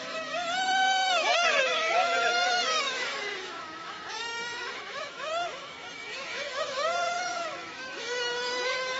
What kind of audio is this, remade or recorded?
remade